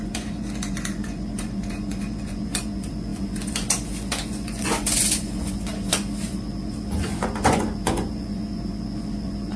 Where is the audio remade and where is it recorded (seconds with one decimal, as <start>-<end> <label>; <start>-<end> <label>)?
0.0-9.6 remade